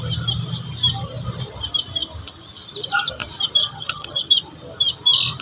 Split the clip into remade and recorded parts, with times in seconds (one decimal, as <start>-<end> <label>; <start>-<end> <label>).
0.0-3.6 recorded; 3.6-4.2 remade; 4.2-5.4 recorded